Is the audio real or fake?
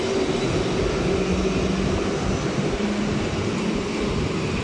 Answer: real